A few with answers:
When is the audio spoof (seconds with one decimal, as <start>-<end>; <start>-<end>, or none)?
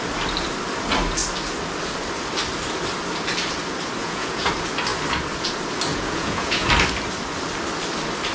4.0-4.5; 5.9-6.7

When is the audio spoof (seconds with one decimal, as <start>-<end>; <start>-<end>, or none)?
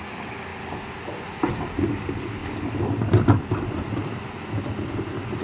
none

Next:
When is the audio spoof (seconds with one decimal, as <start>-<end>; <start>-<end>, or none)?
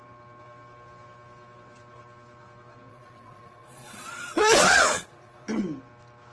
2.9-5.6